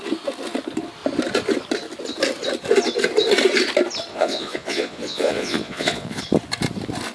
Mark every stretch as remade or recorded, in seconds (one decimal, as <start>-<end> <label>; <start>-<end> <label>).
0.0-4.1 recorded; 4.1-6.2 remade; 6.2-7.1 recorded